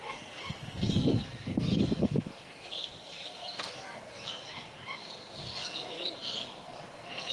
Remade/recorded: remade